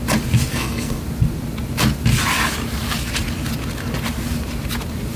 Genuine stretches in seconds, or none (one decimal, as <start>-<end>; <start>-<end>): 0.0-0.5; 1.0-5.2